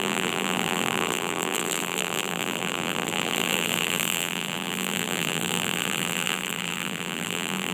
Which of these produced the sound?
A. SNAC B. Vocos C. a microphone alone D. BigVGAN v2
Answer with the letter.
D